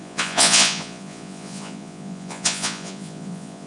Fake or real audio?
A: fake